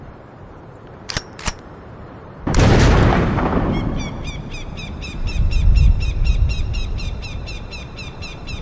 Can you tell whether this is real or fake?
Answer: fake